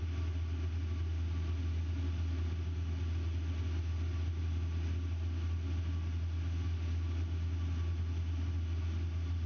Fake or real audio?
real